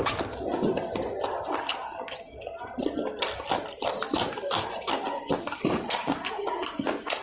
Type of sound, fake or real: real